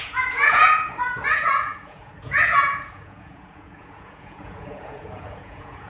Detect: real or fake fake